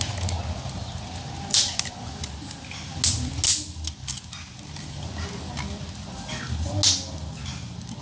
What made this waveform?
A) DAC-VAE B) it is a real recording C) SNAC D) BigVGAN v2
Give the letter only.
B